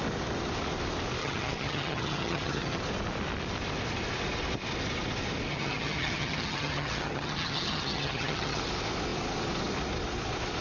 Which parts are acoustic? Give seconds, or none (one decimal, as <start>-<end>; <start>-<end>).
0.0-1.2; 2.8-5.5; 8.6-10.6